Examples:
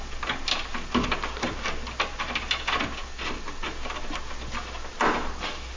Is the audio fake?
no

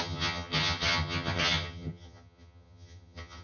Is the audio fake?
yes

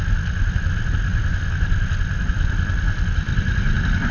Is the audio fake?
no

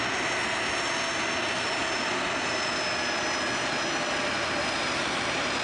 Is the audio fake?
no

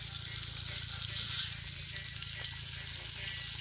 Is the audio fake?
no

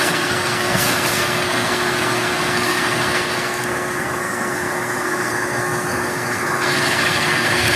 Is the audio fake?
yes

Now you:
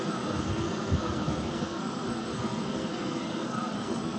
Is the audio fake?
yes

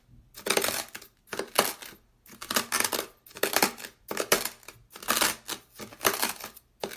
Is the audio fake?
no